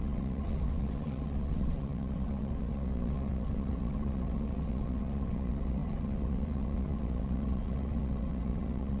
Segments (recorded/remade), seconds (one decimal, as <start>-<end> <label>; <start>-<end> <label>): 0.0-9.0 remade